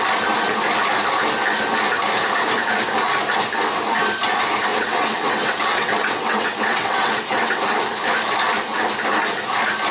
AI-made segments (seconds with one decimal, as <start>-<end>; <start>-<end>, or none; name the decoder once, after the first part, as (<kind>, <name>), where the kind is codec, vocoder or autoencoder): 4.7-7.6 (vocoder, WaveNeXt)